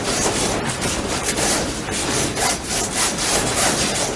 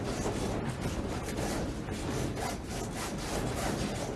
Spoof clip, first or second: first